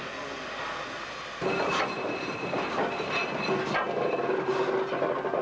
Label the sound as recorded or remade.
recorded